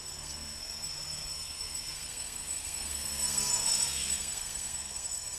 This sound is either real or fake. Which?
fake